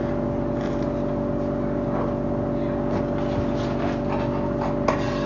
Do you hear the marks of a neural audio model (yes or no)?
no